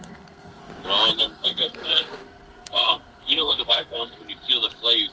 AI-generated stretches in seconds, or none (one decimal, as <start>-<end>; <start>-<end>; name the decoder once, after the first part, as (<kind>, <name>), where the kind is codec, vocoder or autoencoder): 0.0-0.6 (codec, SNAC); 1.2-4.2